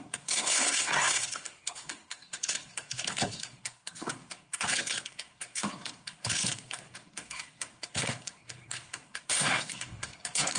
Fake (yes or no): yes